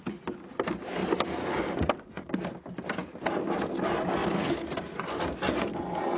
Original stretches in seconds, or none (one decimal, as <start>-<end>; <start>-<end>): 0.0-6.2